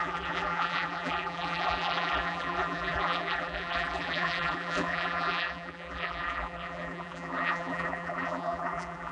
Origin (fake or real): fake